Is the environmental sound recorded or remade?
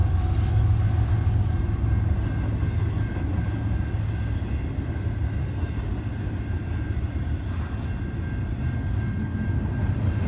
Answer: recorded